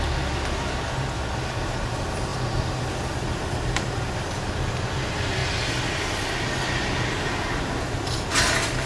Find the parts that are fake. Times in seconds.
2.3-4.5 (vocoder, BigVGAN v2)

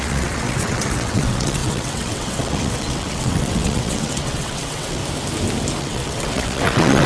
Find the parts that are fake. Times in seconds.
0.0-5.0 (vocoder, WaveNeXt); 5.8-7.1